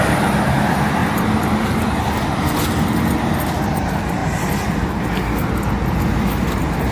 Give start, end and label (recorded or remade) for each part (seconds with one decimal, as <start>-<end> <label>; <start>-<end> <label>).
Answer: 0.0-6.9 recorded